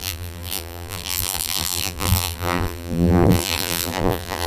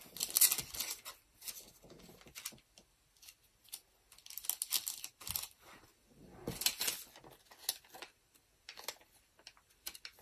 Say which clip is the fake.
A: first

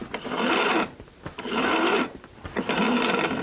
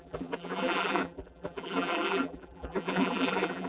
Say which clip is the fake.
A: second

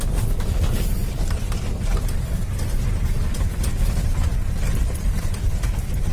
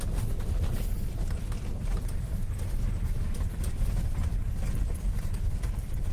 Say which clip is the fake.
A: first